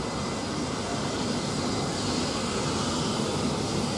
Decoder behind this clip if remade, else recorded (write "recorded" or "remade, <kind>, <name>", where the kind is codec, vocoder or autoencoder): recorded